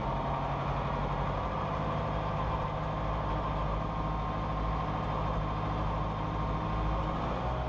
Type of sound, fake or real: real